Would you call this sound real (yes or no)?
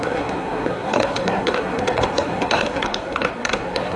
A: no